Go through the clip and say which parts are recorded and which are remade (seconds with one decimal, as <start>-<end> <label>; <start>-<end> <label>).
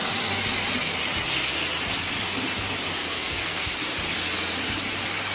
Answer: 0.0-3.0 recorded; 3.0-3.7 remade; 3.7-5.3 recorded